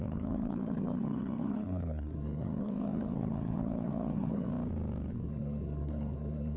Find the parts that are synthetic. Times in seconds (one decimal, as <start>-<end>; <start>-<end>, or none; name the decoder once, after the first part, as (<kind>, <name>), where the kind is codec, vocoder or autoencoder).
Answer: 0.0-4.5 (codec, SNAC); 5.1-6.6